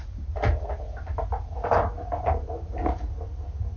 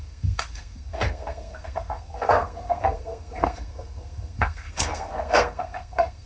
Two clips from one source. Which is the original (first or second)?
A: first